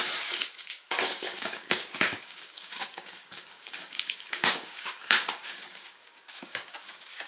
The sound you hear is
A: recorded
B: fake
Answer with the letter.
B